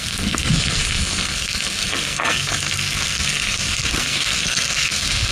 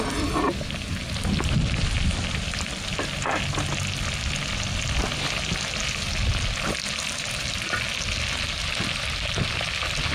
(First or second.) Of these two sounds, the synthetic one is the first